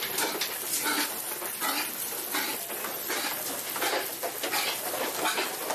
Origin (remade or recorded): recorded